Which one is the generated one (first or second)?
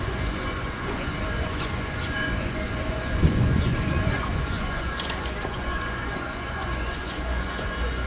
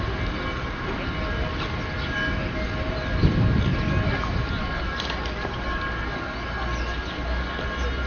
first